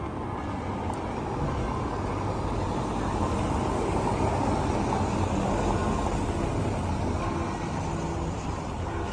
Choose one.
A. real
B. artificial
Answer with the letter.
A